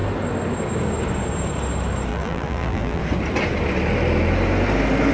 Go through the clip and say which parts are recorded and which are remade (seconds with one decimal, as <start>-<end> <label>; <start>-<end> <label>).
0.0-2.1 recorded; 2.1-3.0 remade; 3.0-5.1 recorded